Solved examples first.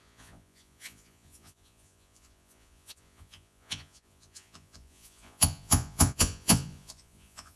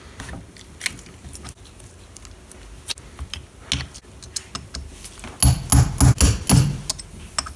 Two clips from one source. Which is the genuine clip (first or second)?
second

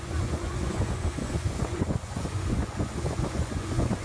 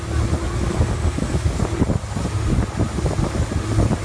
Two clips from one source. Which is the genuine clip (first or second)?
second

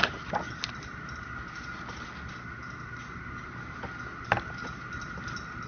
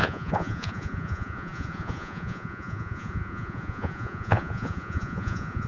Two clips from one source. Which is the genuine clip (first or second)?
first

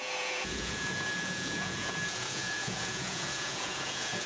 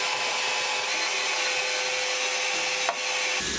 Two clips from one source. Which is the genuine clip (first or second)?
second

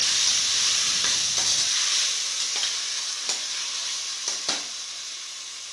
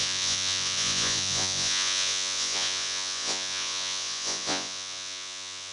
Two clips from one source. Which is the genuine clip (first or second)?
first